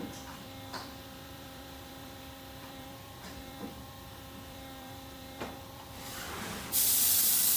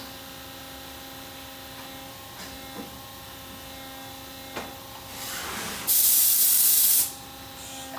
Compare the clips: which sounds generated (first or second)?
first